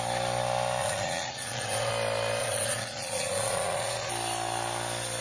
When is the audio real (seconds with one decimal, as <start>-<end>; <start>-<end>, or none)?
0.0-0.8; 1.9-2.4; 4.1-5.2

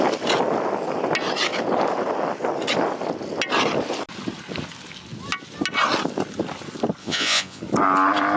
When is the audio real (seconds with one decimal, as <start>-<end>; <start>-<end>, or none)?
0.0-7.0; 7.6-8.4

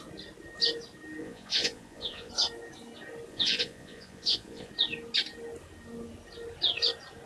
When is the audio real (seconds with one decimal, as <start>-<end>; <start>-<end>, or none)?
0.0-1.2; 2.3-3.3; 4.7-7.3

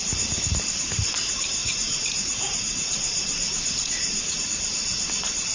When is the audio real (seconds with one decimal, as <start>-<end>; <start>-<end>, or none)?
0.0-1.6; 4.4-5.5

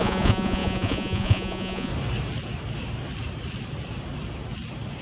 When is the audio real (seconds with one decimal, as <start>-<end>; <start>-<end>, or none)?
1.9-5.0